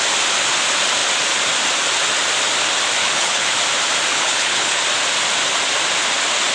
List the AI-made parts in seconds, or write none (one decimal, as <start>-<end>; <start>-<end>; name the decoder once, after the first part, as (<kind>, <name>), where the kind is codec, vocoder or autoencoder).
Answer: 3.0-3.5 (codec, HILCodec); 4.1-4.8